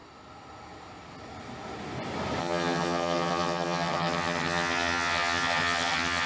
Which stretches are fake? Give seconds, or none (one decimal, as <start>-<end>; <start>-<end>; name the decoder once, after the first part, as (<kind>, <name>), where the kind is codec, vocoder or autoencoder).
2.4-6.3 (vocoder, HiFi-GAN)